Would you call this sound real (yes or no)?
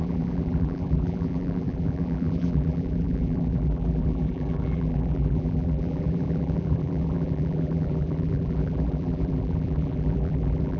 no